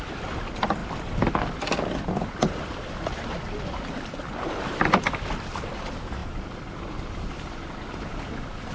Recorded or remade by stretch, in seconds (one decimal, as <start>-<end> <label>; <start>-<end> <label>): 0.0-0.8 recorded; 0.8-5.6 remade; 5.6-8.7 recorded

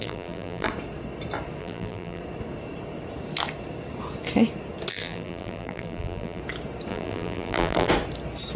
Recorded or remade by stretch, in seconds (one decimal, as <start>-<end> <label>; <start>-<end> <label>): 0.0-0.7 remade; 0.7-1.6 recorded; 1.6-2.2 remade; 2.2-4.9 recorded; 4.9-6.4 remade; 6.4-6.9 recorded; 6.9-7.9 remade; 7.9-8.6 recorded

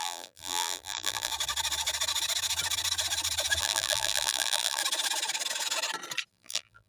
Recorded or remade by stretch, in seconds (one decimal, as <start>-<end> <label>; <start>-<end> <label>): 0.0-1.3 remade; 1.3-3.6 recorded; 3.6-4.8 remade; 4.8-6.3 recorded; 6.3-6.9 remade

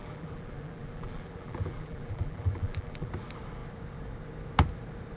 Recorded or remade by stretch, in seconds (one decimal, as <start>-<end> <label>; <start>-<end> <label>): 0.0-3.1 remade; 3.1-5.2 recorded

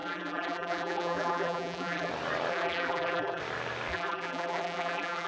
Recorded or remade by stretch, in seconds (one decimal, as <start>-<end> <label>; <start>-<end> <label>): 0.0-2.1 remade; 2.1-2.5 recorded; 2.5-3.4 remade; 3.4-3.9 recorded; 3.9-5.3 remade

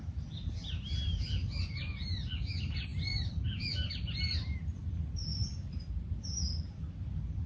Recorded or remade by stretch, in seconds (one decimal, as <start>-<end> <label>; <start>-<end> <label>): 0.0-1.4 recorded; 1.4-2.5 remade; 2.5-2.9 recorded; 2.9-3.9 remade; 3.9-5.3 recorded; 5.3-7.5 remade

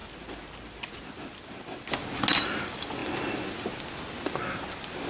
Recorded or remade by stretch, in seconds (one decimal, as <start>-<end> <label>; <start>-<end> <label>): 0.0-2.3 recorded; 2.3-3.0 remade; 3.0-5.1 recorded

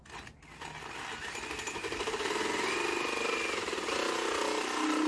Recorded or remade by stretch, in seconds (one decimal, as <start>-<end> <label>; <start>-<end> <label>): 0.0-1.8 recorded; 1.8-2.5 remade; 2.5-5.1 recorded